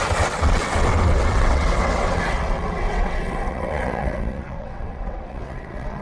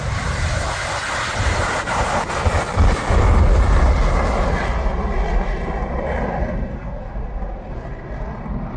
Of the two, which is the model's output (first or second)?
first